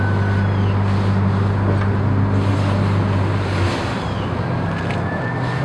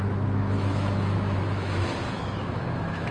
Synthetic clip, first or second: second